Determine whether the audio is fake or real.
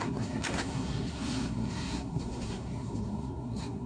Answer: fake